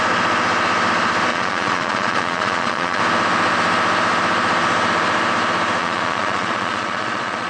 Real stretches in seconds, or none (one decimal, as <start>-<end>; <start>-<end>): 0.0-1.3; 3.0-5.8